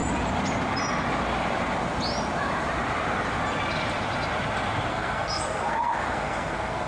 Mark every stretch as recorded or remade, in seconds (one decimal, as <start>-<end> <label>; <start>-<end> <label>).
0.0-4.9 recorded; 4.9-6.9 remade